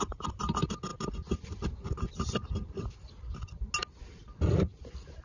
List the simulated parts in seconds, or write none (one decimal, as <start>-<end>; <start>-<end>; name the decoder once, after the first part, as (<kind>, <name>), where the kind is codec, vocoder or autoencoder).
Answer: none